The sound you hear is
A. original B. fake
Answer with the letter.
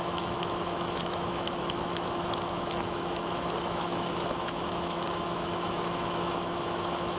B